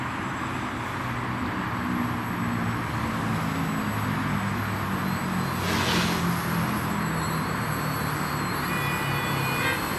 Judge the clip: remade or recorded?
recorded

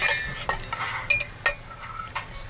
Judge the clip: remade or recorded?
recorded